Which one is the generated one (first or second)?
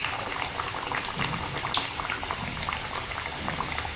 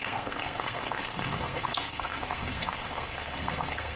second